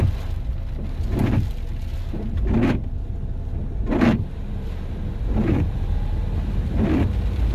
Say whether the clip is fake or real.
real